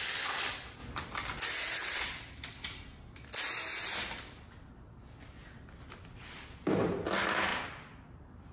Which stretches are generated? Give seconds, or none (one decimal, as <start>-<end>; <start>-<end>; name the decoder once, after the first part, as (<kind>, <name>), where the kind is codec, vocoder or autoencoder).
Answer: none